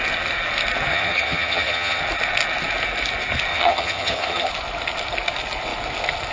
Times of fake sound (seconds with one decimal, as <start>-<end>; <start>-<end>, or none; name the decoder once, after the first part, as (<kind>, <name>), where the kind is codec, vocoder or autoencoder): 0.9-2.0 (vocoder, HiFi-GAN); 3.5-4.5